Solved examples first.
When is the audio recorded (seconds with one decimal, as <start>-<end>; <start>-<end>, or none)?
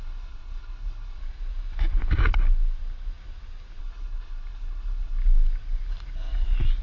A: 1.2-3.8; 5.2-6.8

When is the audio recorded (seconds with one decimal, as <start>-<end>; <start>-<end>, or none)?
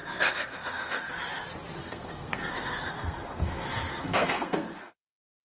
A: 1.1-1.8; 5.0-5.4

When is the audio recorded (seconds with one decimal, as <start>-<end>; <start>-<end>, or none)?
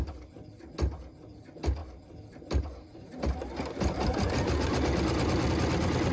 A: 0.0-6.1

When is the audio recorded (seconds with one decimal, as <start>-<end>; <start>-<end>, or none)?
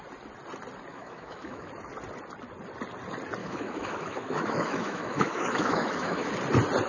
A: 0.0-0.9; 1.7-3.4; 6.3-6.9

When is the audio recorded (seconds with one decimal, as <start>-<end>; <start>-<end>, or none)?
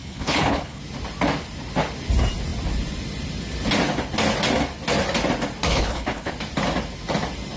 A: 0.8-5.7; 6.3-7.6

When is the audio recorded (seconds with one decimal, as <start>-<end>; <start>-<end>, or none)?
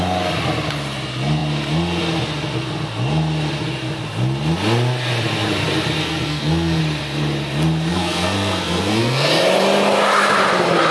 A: 0.0-6.0; 6.8-7.9; 9.3-10.9